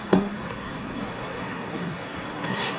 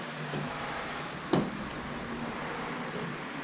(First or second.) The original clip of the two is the second